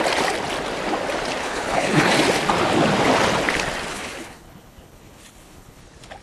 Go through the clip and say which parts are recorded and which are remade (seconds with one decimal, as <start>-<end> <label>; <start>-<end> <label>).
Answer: 0.0-1.4 recorded; 1.4-2.1 remade; 2.1-3.9 recorded; 3.9-5.8 remade; 5.8-6.2 recorded